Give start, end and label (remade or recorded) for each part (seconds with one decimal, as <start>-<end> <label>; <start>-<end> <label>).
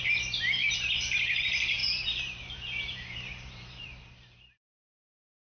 0.0-5.4 remade